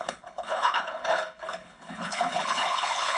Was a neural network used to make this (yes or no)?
yes